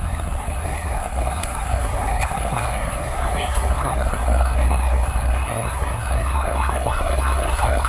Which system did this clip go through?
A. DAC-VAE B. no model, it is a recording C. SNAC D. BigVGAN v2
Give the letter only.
C